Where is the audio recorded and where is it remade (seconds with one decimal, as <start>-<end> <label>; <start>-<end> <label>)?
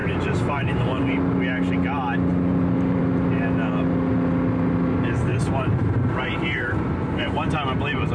0.0-1.0 remade; 1.0-2.3 recorded; 2.3-3.0 remade; 3.0-5.3 recorded; 5.3-7.5 remade; 7.5-8.1 recorded